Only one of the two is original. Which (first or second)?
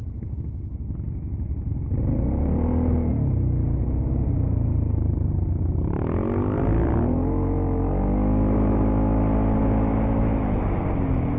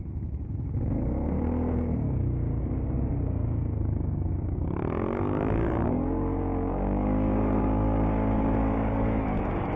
first